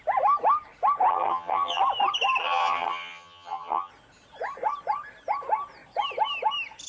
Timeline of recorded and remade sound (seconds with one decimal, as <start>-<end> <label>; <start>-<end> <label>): 0.0-1.1 recorded; 1.1-1.8 remade; 1.8-2.4 recorded; 2.4-3.9 remade; 3.9-6.9 recorded